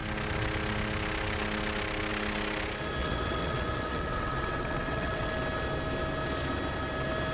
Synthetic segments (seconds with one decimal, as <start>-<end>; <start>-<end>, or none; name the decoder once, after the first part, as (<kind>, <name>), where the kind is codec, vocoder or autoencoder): 3.0-5.3 (vocoder, WaveNeXt)